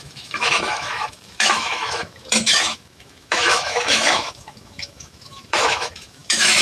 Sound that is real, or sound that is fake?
fake